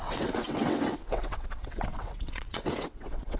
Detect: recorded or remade remade